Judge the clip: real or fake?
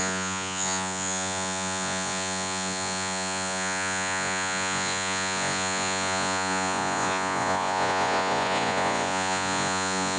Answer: fake